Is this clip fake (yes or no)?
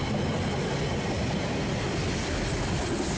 no